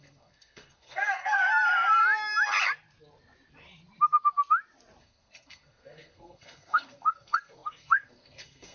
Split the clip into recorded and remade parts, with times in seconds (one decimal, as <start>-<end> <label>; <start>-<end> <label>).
0.0-1.4 remade; 1.4-5.0 recorded; 5.0-8.7 remade